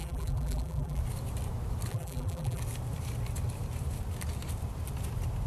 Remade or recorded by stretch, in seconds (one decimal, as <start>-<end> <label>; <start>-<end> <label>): 0.0-1.0 remade; 1.0-1.9 recorded; 1.9-2.6 remade; 2.6-5.5 recorded